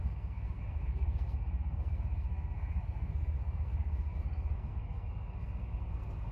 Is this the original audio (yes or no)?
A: no